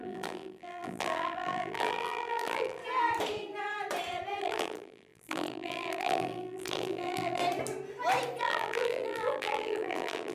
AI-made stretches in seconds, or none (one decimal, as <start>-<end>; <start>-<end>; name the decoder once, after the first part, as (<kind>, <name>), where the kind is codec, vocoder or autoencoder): 0.0-2.8 (vocoder, BigVGAN v2); 4.4-7.4; 8.4-10.3